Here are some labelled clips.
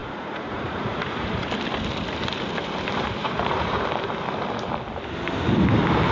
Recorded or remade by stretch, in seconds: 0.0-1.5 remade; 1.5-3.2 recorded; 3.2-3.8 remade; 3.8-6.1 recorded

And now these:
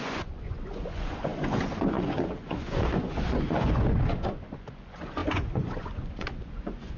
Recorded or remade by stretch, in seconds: 0.0-7.0 remade